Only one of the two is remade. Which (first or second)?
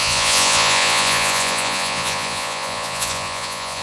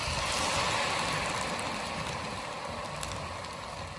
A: first